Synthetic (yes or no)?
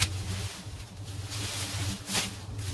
no